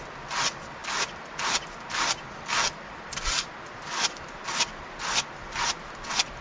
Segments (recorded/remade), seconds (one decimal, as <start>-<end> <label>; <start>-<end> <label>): 0.0-6.4 recorded